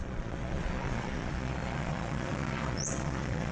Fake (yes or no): yes